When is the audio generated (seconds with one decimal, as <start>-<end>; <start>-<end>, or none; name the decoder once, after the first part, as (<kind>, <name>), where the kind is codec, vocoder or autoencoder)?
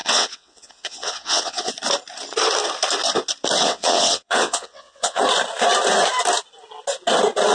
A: 0.0-1.7 (vocoder, WaveNeXt); 3.6-5.2